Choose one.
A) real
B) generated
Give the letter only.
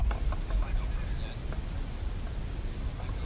A